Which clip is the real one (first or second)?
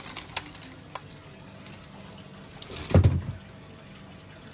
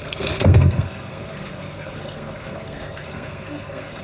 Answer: first